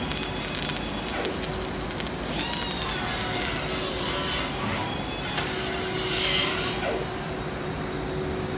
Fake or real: real